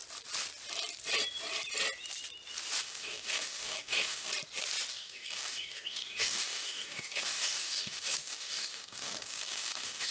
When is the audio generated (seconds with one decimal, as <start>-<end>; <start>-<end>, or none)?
2.8-4.3; 4.9-10.1